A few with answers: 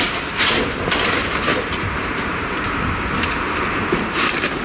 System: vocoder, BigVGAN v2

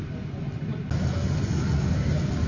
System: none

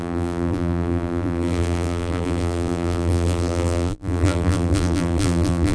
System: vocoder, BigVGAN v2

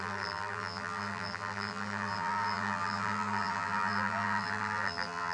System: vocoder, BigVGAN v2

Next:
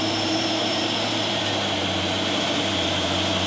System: vocoder, BigVGAN v2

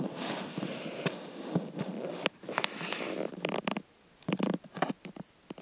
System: none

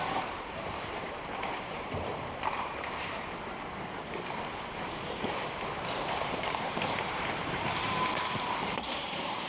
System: vocoder, BigVGAN v2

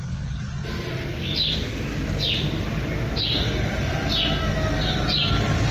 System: none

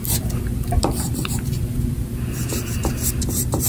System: vocoder, BigVGAN v2